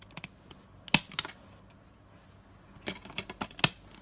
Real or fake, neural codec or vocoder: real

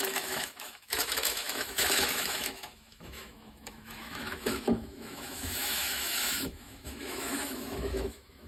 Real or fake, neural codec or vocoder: fake, autoencoder, DAC-VAE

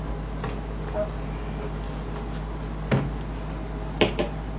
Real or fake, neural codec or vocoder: real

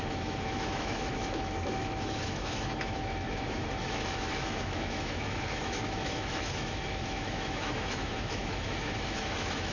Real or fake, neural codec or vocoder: fake, autoencoder, DAC-VAE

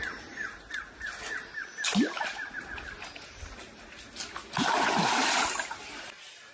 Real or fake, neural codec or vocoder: real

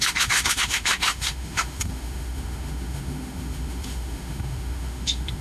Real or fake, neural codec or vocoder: fake, autoencoder, DAC-VAE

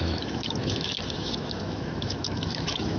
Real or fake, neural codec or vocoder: fake, autoencoder, DAC-VAE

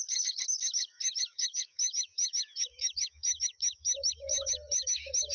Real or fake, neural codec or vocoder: fake, autoencoder, DAC-VAE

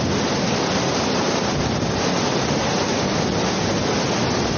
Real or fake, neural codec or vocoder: real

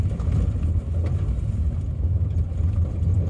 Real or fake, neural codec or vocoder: real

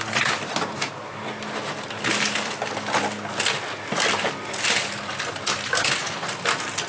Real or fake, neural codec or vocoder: real